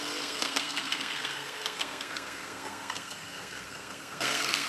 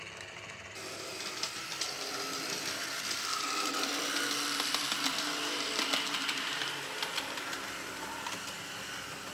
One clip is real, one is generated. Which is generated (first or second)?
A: first